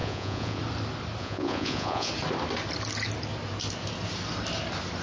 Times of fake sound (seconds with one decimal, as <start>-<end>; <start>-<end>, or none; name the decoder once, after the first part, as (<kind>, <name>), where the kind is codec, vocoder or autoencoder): 0.0-0.6 (vocoder, Vocos); 1.2-2.1